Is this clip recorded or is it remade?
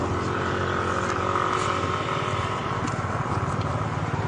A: recorded